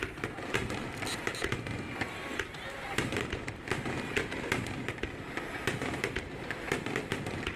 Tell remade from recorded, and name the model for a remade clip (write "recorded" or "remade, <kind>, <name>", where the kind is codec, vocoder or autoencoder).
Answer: recorded